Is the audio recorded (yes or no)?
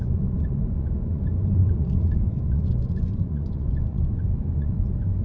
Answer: no